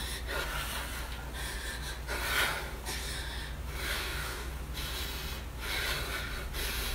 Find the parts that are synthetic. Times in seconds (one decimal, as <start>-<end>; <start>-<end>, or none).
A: 3.9-4.5